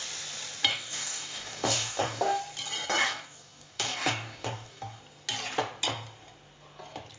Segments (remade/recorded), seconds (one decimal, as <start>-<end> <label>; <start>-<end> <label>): 0.0-0.7 recorded; 0.7-2.4 remade; 2.4-3.0 recorded; 3.0-5.0 remade; 5.0-7.2 recorded